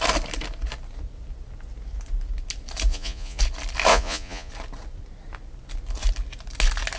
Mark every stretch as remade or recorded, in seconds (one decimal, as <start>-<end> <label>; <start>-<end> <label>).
0.0-2.9 recorded; 2.9-3.4 remade; 3.4-3.9 recorded; 3.9-4.5 remade; 4.5-7.0 recorded